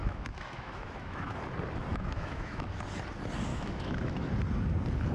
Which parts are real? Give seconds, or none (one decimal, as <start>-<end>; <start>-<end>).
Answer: 1.4-1.9; 2.8-3.5; 4.3-5.1